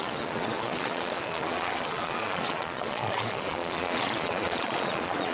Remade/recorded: remade